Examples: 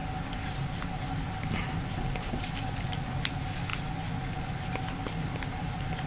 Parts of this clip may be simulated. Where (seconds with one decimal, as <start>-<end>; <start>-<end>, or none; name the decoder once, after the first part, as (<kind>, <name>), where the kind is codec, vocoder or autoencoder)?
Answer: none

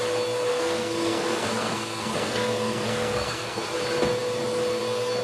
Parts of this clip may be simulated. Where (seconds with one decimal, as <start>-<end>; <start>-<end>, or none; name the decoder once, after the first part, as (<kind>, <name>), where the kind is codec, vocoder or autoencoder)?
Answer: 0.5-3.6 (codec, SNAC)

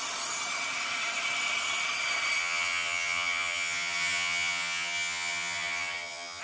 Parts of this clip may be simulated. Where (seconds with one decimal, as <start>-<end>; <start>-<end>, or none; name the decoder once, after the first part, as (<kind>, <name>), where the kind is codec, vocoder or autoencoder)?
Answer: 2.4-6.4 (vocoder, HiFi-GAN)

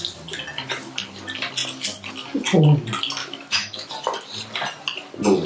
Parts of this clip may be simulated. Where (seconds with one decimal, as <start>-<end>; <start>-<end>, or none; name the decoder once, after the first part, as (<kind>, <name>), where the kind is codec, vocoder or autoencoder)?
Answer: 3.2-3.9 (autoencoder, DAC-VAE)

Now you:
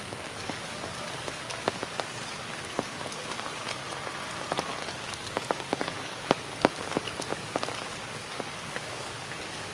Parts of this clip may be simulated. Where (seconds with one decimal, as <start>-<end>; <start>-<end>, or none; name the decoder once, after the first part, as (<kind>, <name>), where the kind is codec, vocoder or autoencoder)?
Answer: 0.0-3.8 (codec, DAC); 4.9-9.7

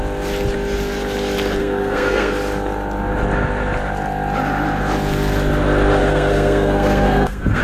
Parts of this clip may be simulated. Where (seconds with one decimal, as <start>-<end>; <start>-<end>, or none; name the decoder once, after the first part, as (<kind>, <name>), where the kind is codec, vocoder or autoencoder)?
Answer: 1.6-2.3 (codec, SNAC); 6.0-7.6

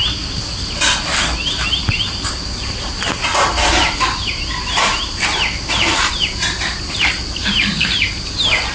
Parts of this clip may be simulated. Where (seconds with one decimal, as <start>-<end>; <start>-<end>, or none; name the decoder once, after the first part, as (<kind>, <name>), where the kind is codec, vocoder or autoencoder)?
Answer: 1.8-7.0 (vocoder, BigVGAN v2); 7.4-8.1